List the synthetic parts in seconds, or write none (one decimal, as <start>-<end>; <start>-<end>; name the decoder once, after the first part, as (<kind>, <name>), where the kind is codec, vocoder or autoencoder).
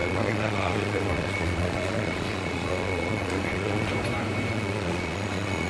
0.0-3.9 (vocoder, Vocos); 4.5-5.7